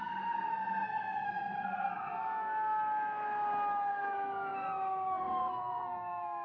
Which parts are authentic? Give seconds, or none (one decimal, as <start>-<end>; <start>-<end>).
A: 1.9-3.9